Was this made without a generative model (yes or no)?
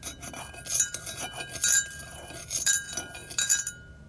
yes